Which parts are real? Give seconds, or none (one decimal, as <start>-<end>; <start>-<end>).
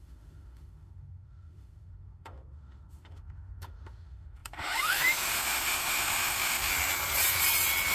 6.7-7.9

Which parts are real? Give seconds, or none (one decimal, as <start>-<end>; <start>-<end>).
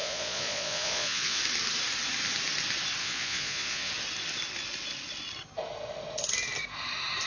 1.4-3.0; 3.9-7.3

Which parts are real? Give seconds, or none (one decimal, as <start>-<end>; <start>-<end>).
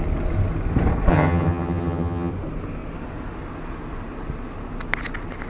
0.0-1.1; 2.3-5.5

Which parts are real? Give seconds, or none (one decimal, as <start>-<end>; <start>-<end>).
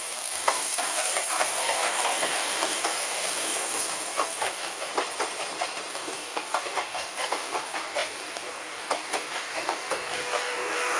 4.9-5.9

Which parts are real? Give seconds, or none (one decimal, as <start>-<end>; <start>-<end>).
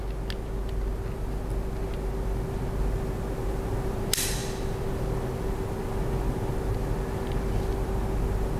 0.0-8.6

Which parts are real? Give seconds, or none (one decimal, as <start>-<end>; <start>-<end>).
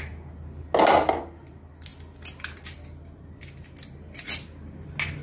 0.0-5.2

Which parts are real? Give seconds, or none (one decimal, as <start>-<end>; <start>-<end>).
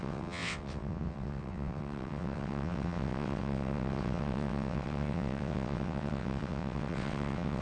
none